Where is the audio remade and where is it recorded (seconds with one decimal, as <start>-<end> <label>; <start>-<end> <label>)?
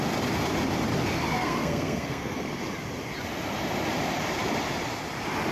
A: 0.0-1.4 recorded; 1.4-2.6 remade; 2.6-5.5 recorded